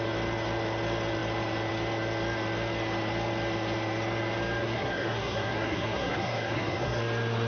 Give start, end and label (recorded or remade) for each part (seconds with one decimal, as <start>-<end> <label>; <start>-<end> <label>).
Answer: 0.0-4.6 recorded; 4.6-7.0 remade; 7.0-7.5 recorded